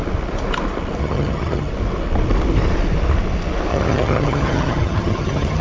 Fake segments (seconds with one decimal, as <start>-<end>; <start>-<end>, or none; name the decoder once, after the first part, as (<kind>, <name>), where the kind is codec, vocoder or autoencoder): 1.0-1.7 (vocoder, HiFi-GAN); 3.7-5.6